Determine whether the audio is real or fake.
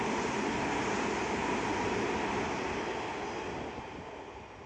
real